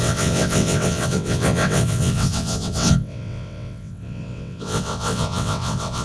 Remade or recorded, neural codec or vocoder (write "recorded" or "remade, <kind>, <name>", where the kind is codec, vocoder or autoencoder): remade, vocoder, WaveNeXt